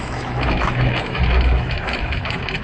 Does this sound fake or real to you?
fake